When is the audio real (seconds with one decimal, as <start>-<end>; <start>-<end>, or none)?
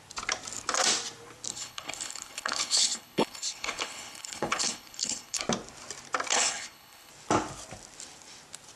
0.0-1.5; 5.4-6.3; 7.1-8.8